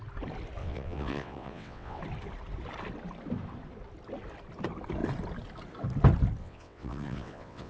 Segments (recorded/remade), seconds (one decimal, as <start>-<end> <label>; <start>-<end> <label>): 0.0-0.6 recorded; 0.6-2.0 remade; 2.0-6.4 recorded; 6.4-7.7 remade